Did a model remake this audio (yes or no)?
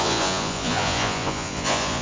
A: yes